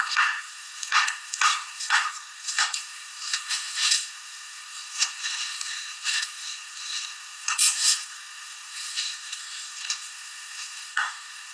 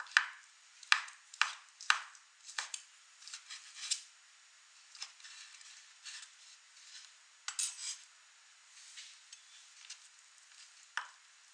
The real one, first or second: second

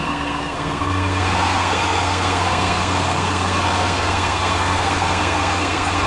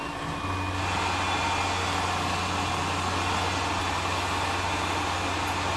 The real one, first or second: second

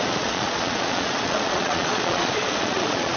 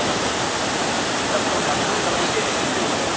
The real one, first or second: second